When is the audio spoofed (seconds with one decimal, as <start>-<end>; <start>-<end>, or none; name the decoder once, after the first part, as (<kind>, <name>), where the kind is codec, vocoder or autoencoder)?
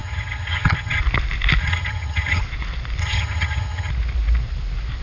0.0-1.0 (vocoder, HiFi-GAN); 1.6-2.4; 3.0-3.9